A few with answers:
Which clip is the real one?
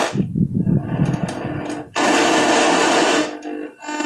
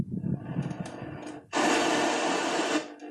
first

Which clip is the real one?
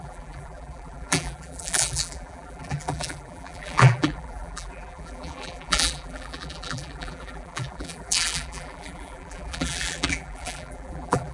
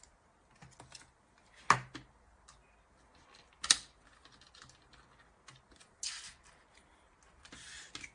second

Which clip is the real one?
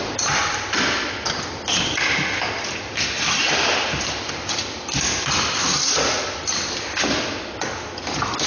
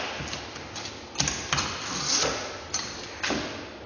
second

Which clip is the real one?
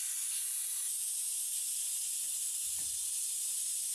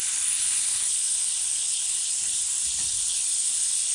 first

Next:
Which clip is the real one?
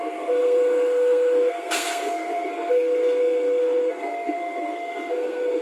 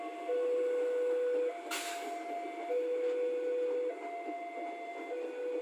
second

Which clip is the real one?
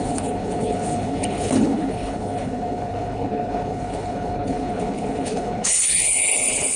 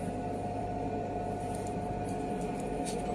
second